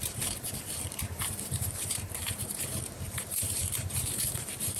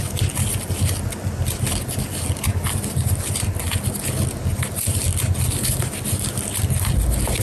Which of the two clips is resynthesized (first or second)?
first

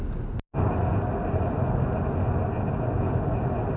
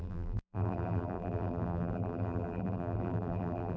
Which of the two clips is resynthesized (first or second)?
second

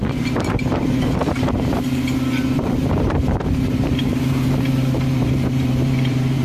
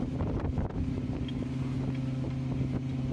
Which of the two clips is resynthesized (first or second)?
first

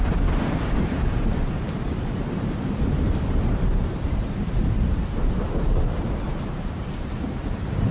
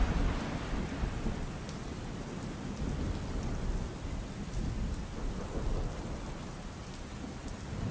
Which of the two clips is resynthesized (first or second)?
first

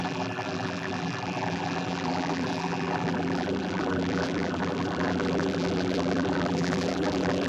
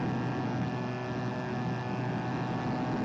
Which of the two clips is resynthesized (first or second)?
first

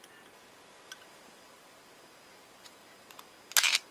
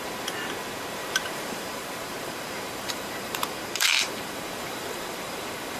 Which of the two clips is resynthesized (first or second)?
second